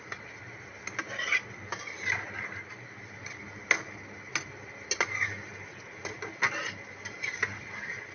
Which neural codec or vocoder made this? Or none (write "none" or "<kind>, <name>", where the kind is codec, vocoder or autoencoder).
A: none